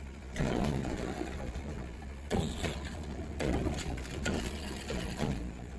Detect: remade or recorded remade